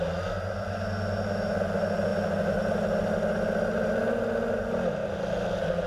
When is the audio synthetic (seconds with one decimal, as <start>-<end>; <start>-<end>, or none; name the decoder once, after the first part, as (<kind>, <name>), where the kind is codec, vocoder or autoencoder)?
none